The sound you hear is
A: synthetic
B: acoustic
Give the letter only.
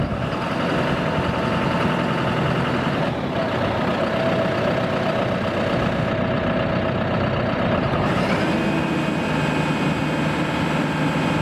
B